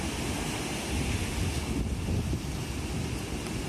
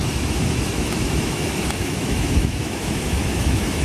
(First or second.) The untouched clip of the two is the first